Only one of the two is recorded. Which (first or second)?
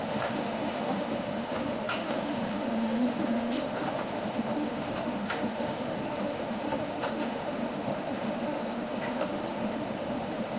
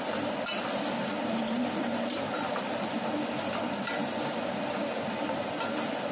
second